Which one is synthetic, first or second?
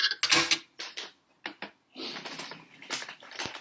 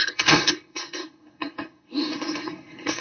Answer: second